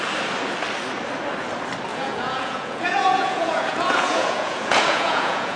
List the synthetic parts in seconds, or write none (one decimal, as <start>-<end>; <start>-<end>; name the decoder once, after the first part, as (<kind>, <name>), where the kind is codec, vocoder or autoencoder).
1.9-5.6 (vocoder, Vocos)